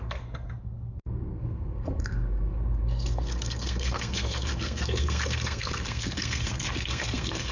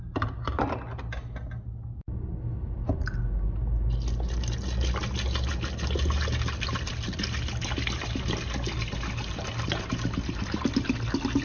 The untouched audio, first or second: second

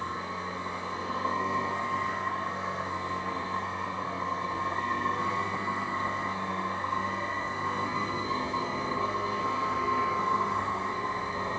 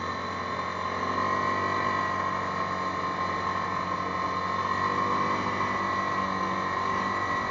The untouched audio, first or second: second